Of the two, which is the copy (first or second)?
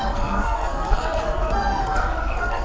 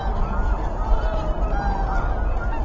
first